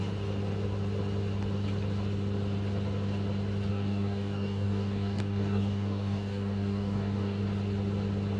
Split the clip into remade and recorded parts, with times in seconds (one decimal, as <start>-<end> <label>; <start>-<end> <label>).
0.0-3.7 recorded; 3.7-7.4 remade; 7.4-8.4 recorded